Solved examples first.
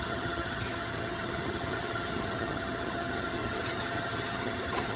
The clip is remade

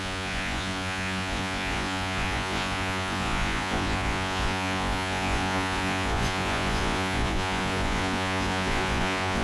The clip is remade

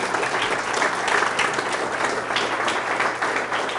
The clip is recorded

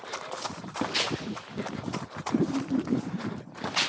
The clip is recorded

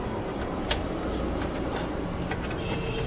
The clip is recorded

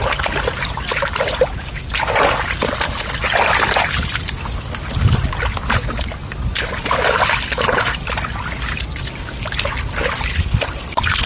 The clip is recorded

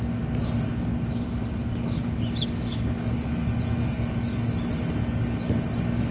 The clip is recorded